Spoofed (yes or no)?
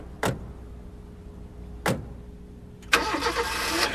no